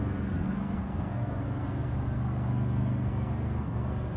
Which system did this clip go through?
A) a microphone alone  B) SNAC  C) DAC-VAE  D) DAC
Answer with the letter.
B